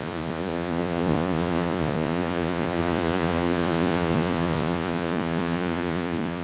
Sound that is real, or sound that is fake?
fake